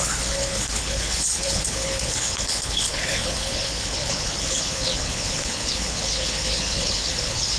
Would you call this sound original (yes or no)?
no